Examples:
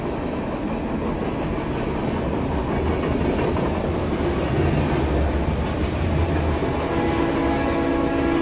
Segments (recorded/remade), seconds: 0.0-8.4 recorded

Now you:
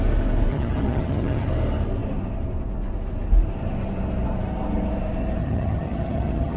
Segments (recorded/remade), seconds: 0.0-0.5 recorded; 0.5-1.5 remade; 1.5-5.4 recorded; 5.4-6.6 remade

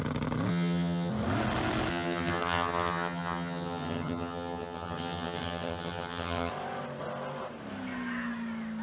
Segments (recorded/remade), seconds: 0.0-0.5 recorded; 0.5-1.1 remade; 1.1-1.9 recorded; 1.9-6.5 remade; 6.5-8.8 recorded

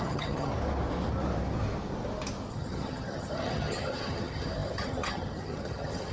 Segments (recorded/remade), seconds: 0.0-0.5 remade; 0.5-2.5 recorded; 2.5-6.1 remade

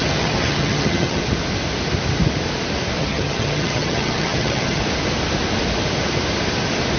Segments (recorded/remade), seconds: 0.0-1.2 remade; 1.2-3.0 recorded; 3.0-4.8 remade; 4.8-7.0 recorded

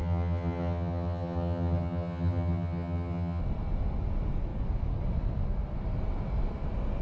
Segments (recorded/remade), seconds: 0.0-3.4 remade; 3.4-7.0 recorded

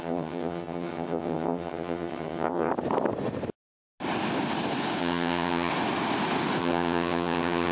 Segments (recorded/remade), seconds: 0.0-2.7 remade; 2.7-5.0 recorded; 5.0-5.7 remade; 5.7-6.6 recorded; 6.6-7.7 remade

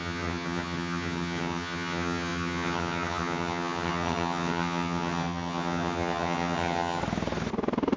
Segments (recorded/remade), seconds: 0.0-7.0 remade; 7.0-8.0 recorded